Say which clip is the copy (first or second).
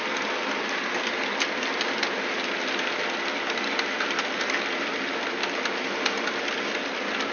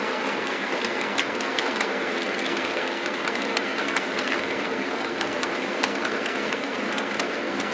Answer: second